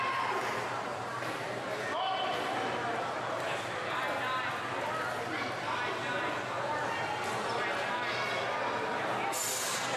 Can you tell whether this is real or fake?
real